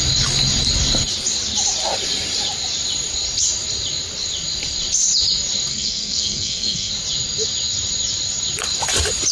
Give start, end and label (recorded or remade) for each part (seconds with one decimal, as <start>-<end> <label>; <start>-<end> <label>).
0.0-5.7 recorded; 5.7-6.9 remade; 6.9-9.3 recorded